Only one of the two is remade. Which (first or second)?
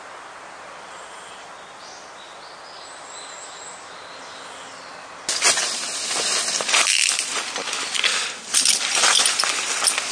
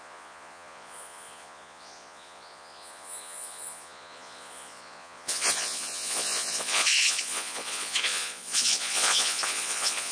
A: second